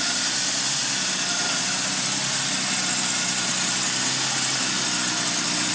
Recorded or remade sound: recorded